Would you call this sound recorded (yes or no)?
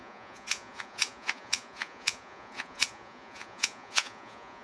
no